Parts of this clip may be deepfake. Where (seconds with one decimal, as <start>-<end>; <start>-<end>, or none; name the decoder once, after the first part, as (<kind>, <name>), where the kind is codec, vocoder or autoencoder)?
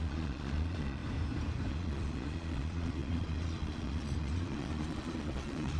0.0-1.0 (vocoder, Vocos); 1.7-5.8